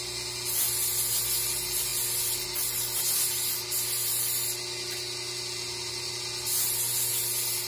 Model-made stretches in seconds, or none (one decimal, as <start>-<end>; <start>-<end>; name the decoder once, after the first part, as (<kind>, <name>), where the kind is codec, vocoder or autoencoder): none